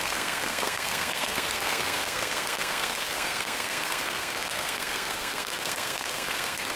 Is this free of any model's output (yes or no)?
no